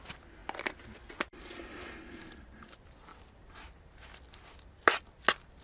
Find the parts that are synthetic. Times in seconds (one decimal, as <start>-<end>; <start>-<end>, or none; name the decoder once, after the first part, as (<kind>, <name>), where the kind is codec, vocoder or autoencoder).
none